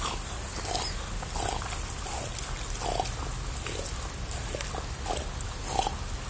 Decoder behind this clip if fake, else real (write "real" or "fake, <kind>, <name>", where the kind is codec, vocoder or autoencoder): real